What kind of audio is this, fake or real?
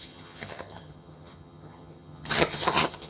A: fake